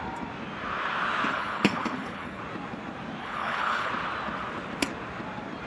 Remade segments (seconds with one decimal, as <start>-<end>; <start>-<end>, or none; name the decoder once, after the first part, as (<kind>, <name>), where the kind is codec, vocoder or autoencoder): 1.3-2.4 (codec, HILCodec); 3.2-3.9